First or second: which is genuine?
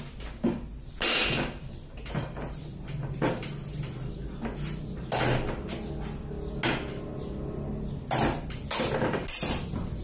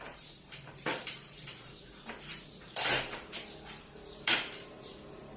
first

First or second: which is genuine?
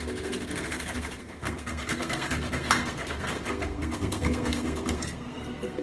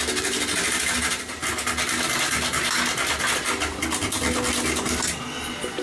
second